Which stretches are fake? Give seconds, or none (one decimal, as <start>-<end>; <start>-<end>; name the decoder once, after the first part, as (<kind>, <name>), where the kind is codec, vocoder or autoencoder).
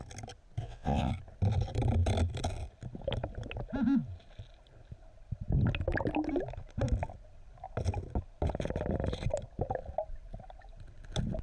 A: 0.6-1.1 (vocoder, WaveNeXt)